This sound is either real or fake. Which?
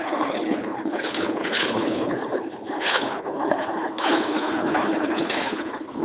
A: fake